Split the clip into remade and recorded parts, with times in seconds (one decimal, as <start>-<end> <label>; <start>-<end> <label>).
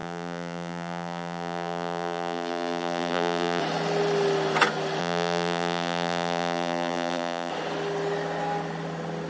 0.0-3.6 remade; 3.6-5.0 recorded; 5.0-7.5 remade; 7.5-9.3 recorded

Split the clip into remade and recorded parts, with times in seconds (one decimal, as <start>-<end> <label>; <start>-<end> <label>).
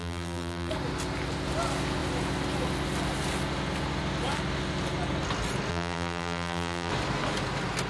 0.0-0.7 remade; 0.7-5.7 recorded; 5.7-6.9 remade; 6.9-7.9 recorded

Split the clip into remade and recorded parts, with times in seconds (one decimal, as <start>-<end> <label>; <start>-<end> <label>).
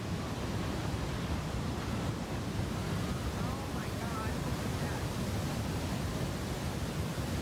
0.0-0.8 recorded; 0.8-2.6 remade; 2.6-3.8 recorded; 3.8-7.4 remade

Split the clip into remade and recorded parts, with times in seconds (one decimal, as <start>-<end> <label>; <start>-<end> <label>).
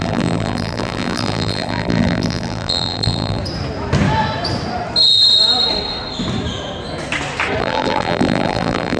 0.0-3.4 remade; 3.4-7.6 recorded; 7.6-9.0 remade